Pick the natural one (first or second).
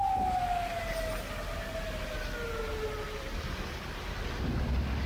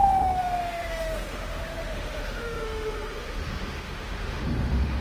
first